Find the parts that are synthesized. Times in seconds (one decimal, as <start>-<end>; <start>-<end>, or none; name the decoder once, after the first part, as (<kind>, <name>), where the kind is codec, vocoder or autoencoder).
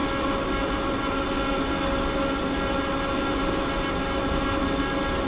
none